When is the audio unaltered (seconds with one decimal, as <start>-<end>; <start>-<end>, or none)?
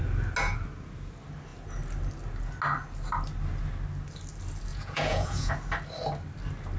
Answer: 0.0-4.7; 5.5-6.8